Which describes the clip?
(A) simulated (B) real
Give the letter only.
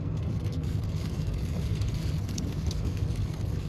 A